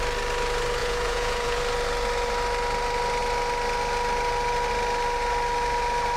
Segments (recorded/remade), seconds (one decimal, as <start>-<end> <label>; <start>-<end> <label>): 0.0-0.8 recorded; 0.8-1.6 remade; 1.6-6.2 recorded